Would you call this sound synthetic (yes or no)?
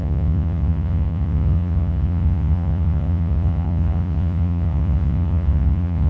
yes